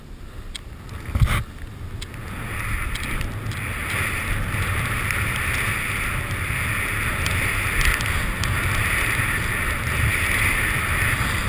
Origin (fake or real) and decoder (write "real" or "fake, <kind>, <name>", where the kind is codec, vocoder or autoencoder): real